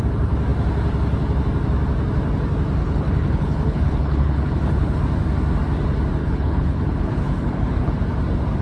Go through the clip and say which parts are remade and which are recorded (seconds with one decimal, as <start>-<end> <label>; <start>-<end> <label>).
0.0-2.8 recorded; 2.8-5.0 remade; 5.0-6.2 recorded; 6.2-7.9 remade; 7.9-8.6 recorded